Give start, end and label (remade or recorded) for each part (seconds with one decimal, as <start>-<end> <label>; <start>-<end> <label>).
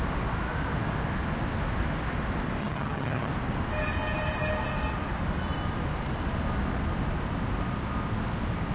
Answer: 0.0-2.6 recorded; 2.6-3.3 remade; 3.3-8.7 recorded